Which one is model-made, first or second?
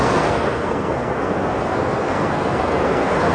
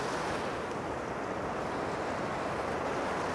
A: first